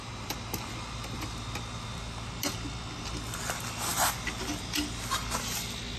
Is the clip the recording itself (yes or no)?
yes